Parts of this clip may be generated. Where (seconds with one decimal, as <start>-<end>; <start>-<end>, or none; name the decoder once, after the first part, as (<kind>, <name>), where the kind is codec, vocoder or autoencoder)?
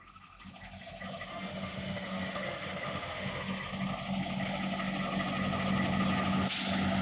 1.3-3.4 (autoencoder, DAC-VAE)